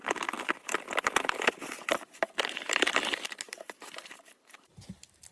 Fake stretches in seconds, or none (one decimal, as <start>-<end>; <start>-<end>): 1.9-5.3